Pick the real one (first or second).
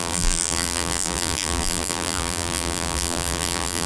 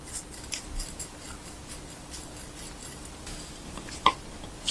second